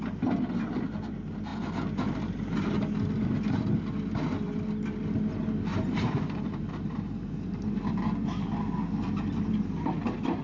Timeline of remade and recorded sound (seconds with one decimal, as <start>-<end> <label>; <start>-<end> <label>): 0.0-5.7 recorded; 5.7-7.4 remade; 7.4-10.4 recorded